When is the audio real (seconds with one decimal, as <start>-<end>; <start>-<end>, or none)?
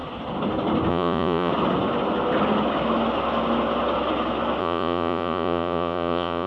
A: 0.0-0.9; 1.5-4.6